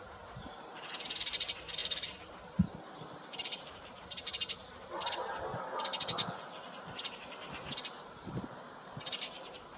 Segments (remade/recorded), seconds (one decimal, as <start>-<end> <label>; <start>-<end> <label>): 0.0-5.9 remade; 5.9-6.7 recorded; 6.7-9.8 remade